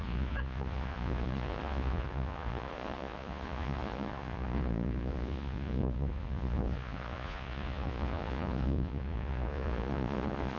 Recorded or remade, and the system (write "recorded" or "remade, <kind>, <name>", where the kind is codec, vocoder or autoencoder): remade, vocoder, Vocos